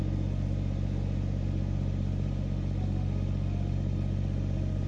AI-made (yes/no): no